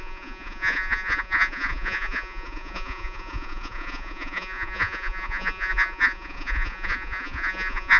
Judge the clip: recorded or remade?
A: remade